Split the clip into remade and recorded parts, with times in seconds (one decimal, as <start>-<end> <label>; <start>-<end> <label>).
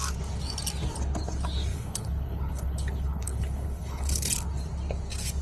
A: 0.0-1.7 recorded; 1.7-4.3 remade; 4.3-5.4 recorded